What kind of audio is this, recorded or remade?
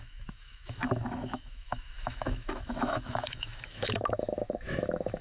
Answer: remade